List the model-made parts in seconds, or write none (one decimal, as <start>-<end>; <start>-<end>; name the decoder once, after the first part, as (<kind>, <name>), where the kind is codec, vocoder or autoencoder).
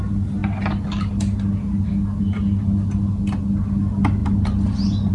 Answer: none